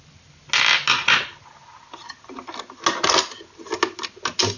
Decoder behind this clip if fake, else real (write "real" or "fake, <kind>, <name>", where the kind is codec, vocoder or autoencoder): real